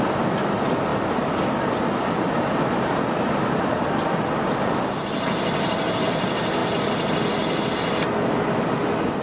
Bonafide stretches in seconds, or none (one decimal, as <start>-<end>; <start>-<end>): 0.0-9.2